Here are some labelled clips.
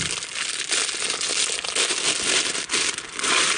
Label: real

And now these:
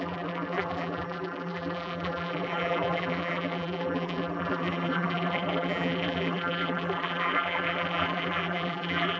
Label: fake